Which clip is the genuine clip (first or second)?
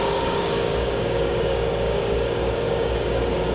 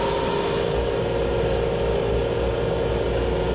second